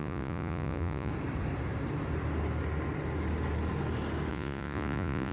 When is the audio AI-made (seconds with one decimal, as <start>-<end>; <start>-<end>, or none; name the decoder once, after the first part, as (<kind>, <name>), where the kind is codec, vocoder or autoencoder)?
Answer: 0.0-1.1 (vocoder, Vocos); 4.3-5.3